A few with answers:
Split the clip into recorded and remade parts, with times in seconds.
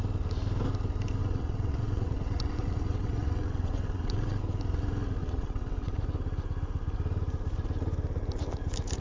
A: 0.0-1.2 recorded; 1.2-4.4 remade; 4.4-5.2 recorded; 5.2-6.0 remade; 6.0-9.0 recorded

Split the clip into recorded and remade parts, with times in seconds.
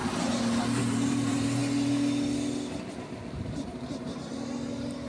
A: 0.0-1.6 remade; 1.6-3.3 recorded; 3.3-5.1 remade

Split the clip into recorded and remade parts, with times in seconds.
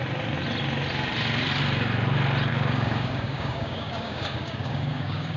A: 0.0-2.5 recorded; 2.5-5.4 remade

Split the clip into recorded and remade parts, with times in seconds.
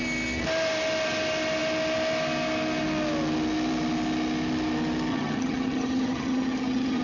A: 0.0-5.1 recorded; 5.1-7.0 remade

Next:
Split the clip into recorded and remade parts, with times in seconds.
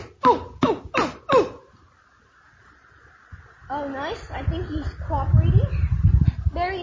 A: 0.0-6.8 recorded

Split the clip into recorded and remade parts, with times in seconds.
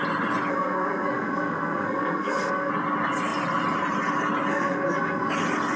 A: 0.0-0.5 recorded; 0.5-2.7 remade; 2.7-4.5 recorded; 4.5-5.3 remade; 5.3-5.8 recorded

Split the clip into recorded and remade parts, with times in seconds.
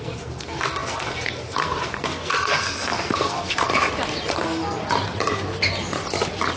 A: 0.0-3.7 remade; 3.7-4.3 recorded; 4.3-4.8 remade; 4.8-6.6 recorded